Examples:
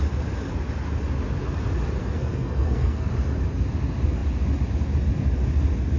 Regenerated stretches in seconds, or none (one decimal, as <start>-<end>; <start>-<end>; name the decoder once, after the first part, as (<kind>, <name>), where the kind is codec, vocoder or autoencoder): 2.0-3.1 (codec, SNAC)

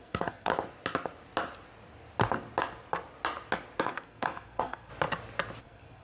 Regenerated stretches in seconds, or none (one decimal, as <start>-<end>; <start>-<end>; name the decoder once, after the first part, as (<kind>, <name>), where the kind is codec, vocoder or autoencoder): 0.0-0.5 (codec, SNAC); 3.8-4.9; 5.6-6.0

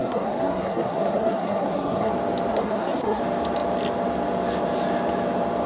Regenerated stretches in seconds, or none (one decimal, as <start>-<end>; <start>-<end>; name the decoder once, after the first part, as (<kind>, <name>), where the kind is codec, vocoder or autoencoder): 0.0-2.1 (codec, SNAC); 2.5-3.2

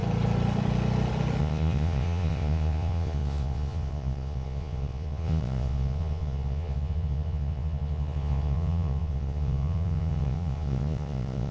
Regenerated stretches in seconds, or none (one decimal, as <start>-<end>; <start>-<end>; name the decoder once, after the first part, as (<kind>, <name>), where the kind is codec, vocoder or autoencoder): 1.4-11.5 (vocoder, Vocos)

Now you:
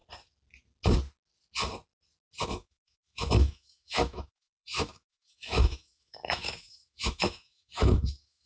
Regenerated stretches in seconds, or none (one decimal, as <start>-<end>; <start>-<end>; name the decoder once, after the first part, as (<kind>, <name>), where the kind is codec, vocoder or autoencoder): 2.4-8.5 (autoencoder, DAC-VAE)